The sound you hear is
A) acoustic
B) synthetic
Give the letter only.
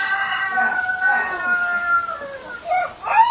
B